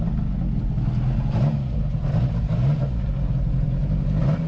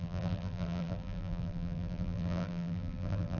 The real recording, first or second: first